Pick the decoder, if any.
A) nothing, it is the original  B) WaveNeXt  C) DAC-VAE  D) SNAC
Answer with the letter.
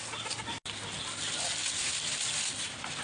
A